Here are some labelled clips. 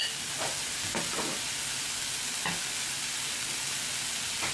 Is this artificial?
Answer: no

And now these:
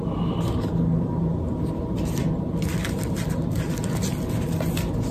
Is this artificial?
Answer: no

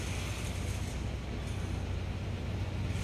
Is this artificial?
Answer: no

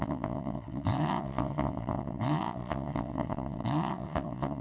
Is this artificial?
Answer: yes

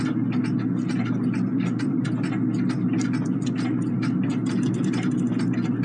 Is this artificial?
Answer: no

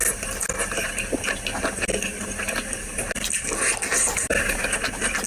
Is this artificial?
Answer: no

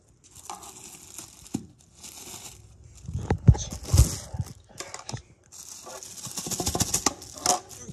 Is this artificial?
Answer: no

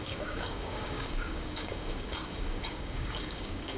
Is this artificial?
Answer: yes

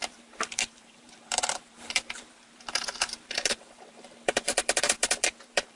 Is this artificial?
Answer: yes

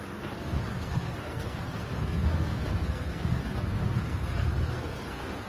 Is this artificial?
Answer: yes